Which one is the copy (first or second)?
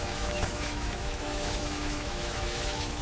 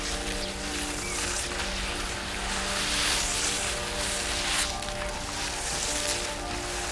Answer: first